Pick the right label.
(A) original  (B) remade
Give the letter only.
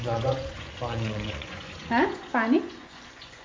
B